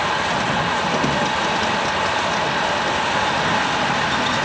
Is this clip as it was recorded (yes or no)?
yes